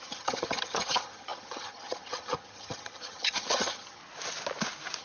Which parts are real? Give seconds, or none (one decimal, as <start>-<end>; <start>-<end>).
4.0-5.0